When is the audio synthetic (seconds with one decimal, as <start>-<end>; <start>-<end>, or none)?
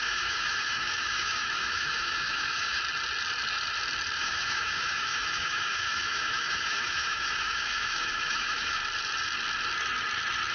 0.0-2.8; 4.2-8.8